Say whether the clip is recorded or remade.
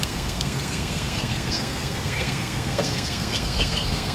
remade